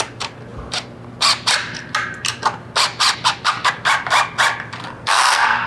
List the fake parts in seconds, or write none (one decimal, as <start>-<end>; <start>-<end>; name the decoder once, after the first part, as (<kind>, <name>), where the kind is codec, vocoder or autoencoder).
4.8-5.7 (codec, SNAC)